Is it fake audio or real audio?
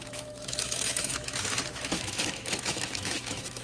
fake